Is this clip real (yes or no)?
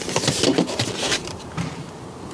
no